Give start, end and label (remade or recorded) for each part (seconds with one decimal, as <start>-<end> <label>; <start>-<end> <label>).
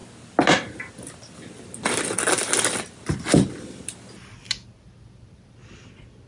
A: 0.0-6.3 recorded